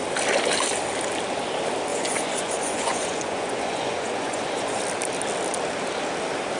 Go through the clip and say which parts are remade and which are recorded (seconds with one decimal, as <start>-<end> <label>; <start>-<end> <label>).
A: 0.0-1.9 recorded; 1.9-4.8 remade; 4.8-6.6 recorded